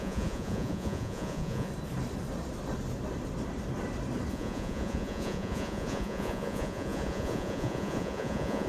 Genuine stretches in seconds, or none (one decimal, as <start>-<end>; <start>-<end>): 1.7-4.3